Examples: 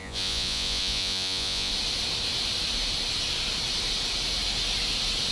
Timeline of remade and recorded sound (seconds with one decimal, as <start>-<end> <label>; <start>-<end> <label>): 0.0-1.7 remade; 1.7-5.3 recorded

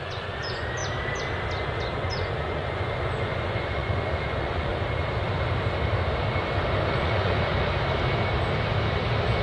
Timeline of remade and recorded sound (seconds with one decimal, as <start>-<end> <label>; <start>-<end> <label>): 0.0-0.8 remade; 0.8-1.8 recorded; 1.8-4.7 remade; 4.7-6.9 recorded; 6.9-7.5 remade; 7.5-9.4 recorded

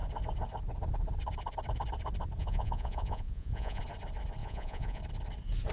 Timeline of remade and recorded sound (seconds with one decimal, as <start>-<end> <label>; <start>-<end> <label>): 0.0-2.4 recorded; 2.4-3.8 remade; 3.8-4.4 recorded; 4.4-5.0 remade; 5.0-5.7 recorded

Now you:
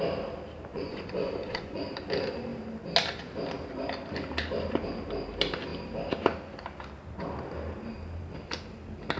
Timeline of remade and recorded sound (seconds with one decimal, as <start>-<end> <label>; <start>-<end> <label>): 0.0-0.7 recorded; 0.7-1.8 remade; 1.8-9.2 recorded

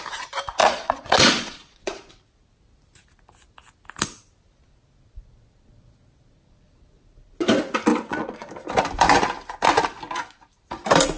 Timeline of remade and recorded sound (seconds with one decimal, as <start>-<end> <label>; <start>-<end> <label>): 0.0-0.6 recorded; 0.6-2.1 remade; 2.1-7.9 recorded; 7.9-8.5 remade; 8.5-11.2 recorded